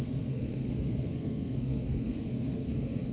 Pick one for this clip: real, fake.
fake